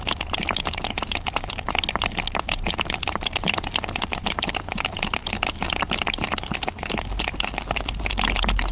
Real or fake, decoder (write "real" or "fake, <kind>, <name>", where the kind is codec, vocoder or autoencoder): fake, vocoder, BigVGAN v2